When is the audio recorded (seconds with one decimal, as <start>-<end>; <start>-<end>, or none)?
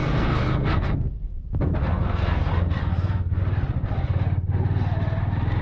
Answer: 1.4-1.8; 2.4-2.8; 3.4-5.6